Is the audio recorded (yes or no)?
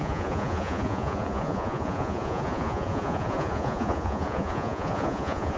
no